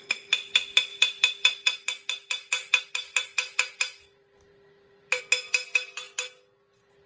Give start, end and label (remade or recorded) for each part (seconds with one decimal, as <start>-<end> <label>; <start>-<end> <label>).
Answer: 0.0-0.9 recorded; 0.9-5.2 remade; 5.2-7.1 recorded